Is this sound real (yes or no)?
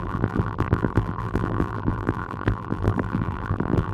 no